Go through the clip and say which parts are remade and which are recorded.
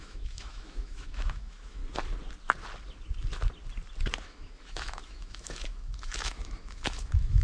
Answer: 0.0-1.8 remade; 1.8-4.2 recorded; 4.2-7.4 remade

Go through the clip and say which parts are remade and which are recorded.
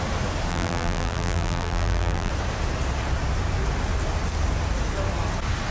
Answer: 0.0-0.5 recorded; 0.5-2.3 remade; 2.3-5.7 recorded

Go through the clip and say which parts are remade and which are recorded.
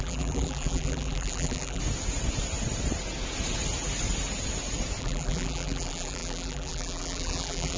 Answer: 0.0-1.8 remade; 1.8-5.0 recorded; 5.0-7.8 remade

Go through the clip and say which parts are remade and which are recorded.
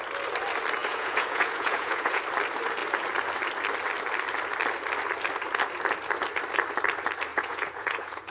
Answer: 0.0-0.8 recorded; 0.8-2.2 remade; 2.2-7.3 recorded; 7.3-8.3 remade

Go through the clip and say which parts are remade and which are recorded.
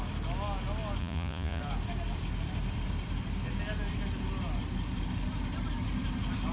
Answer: 0.0-1.0 recorded; 1.0-1.6 remade; 1.6-6.5 recorded